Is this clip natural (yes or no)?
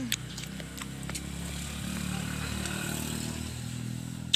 yes